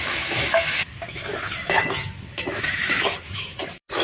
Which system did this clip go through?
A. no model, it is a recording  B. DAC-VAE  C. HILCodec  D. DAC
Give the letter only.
B